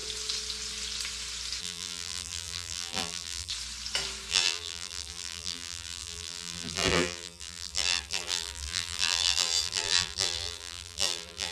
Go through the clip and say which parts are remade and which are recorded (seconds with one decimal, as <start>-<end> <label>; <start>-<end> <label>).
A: 0.0-1.6 recorded; 1.6-3.5 remade; 3.5-4.3 recorded; 4.3-11.5 remade